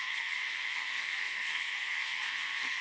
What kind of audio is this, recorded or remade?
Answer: remade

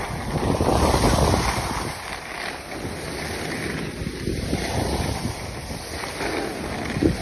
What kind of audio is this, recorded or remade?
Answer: recorded